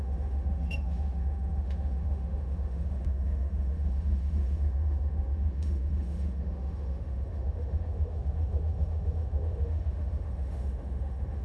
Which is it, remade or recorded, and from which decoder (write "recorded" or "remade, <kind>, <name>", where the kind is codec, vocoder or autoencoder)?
remade, autoencoder, DAC-VAE